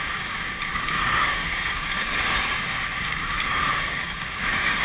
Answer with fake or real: fake